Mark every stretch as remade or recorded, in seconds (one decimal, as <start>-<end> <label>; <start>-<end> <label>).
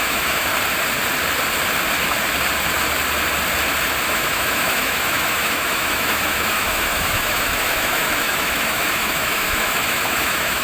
0.0-0.5 remade; 0.5-4.1 recorded; 4.1-10.6 remade